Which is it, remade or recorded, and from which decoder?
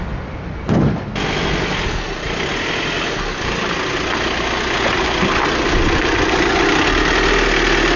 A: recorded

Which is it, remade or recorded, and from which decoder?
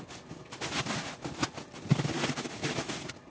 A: recorded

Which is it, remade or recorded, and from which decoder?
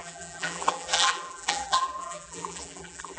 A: remade, vocoder, BigVGAN v2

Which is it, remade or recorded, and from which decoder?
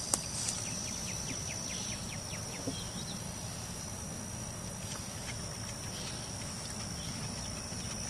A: recorded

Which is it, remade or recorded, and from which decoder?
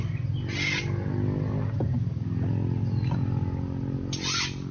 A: recorded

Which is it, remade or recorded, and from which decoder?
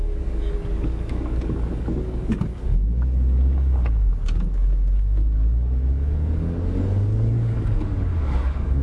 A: remade, codec, DAC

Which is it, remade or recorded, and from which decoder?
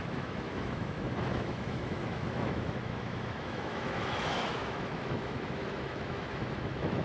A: remade, autoencoder, DAC-VAE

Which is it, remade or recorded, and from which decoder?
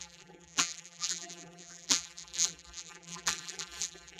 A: remade, vocoder, BigVGAN v2